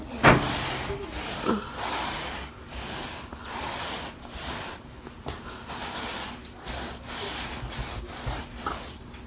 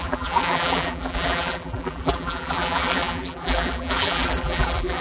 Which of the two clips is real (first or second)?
first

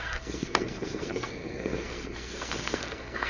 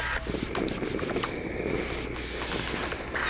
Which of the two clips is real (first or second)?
second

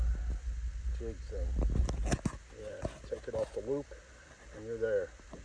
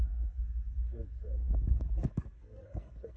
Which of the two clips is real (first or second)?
first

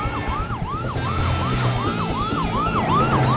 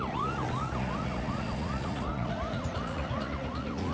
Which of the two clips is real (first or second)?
first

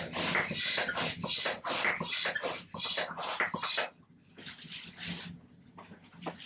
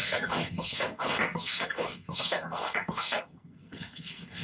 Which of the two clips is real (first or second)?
first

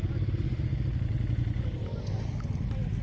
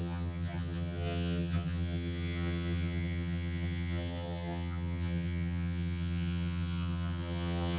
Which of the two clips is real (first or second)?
first